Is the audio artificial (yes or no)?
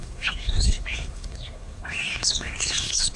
yes